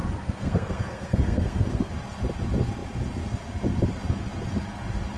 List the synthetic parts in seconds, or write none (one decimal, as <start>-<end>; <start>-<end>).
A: 0.0-1.9